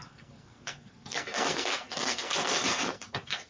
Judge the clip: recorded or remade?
remade